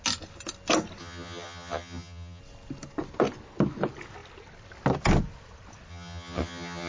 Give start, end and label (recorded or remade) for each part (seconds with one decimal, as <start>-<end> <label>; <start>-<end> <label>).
0.0-1.0 recorded; 1.0-2.4 remade; 2.4-5.9 recorded; 5.9-6.9 remade